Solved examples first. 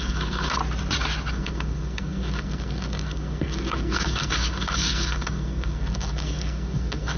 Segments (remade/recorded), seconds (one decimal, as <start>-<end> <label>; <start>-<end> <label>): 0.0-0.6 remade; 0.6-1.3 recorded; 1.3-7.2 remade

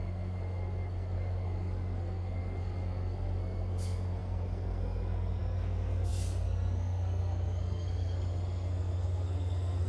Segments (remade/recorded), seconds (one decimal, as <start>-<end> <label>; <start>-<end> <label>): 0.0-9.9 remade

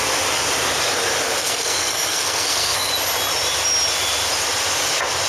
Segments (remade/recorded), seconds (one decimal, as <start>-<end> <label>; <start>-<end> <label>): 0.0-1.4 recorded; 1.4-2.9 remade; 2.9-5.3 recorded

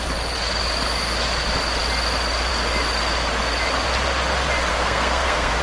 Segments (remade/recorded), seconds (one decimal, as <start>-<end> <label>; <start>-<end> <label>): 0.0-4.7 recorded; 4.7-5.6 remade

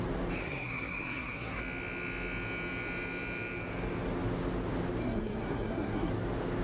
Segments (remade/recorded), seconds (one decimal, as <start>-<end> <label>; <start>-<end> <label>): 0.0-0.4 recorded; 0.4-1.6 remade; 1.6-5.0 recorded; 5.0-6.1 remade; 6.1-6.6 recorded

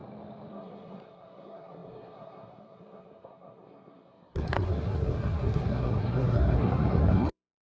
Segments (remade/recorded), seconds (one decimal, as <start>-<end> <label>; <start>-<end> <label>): 0.0-0.5 recorded; 0.5-7.7 remade